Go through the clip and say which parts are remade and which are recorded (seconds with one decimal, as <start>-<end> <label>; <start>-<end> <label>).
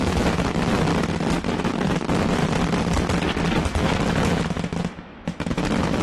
0.0-0.9 remade; 0.9-1.5 recorded; 1.5-2.4 remade; 2.4-3.6 recorded; 3.6-6.0 remade